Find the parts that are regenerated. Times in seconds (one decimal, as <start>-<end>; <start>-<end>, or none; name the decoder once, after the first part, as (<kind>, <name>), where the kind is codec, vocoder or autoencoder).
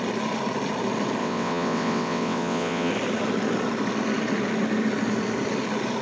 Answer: 1.2-2.9 (vocoder, WaveNeXt)